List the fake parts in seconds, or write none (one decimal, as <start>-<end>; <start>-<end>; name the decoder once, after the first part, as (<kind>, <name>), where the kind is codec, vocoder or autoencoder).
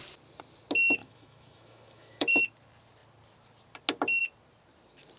1.0-2.4 (autoencoder, DAC-VAE)